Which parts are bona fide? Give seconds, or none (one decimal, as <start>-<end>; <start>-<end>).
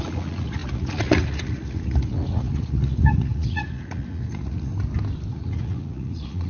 4.7-5.3